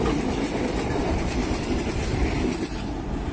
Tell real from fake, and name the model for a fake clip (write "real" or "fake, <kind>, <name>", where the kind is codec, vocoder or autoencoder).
real